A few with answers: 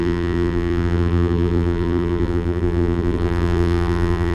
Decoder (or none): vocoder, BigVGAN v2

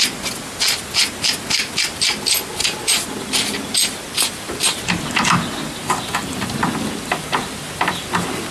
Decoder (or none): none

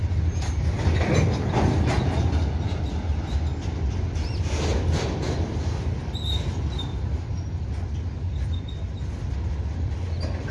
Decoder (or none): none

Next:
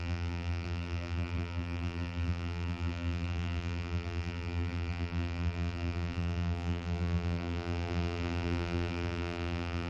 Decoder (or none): vocoder, BigVGAN v2